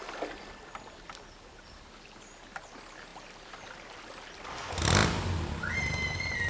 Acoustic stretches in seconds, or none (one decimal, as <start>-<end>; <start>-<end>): 0.0-6.5